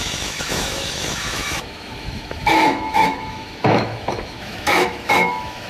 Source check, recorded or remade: remade